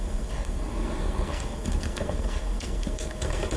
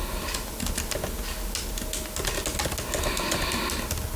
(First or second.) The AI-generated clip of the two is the first